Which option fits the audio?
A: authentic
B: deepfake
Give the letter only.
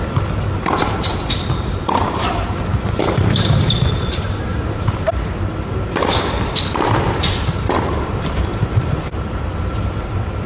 B